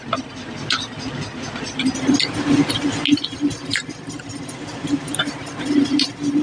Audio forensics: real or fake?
real